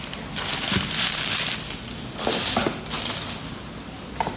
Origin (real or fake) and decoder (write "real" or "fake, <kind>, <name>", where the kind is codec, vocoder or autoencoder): real